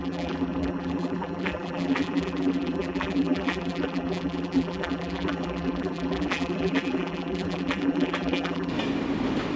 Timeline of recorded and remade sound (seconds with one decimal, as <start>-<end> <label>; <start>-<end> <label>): 0.0-8.7 remade; 8.7-9.6 recorded